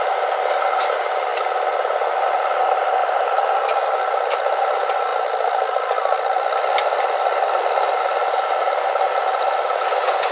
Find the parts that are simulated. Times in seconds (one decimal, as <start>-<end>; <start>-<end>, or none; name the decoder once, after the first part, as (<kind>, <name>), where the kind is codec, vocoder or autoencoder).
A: 1.3-2.6 (vocoder, BigVGAN v2); 3.0-3.6; 5.1-9.4